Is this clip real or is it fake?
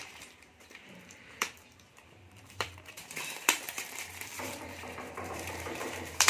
fake